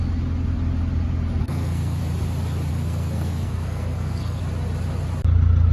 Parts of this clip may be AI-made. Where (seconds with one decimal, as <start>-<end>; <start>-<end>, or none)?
1.4-2.0; 2.7-4.4